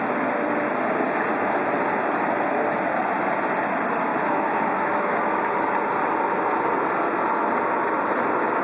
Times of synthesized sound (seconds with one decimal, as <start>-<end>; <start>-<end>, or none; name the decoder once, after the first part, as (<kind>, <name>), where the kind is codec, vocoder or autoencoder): 4.1-5.2 (autoencoder, DAC-VAE)